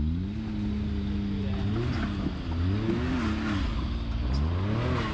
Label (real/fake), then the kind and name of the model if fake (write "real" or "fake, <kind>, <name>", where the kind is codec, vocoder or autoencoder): real